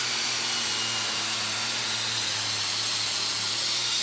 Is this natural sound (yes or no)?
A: yes